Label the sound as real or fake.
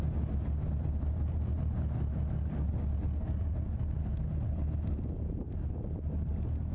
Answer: real